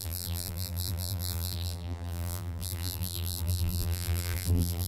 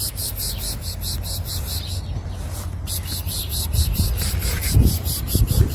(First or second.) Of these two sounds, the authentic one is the second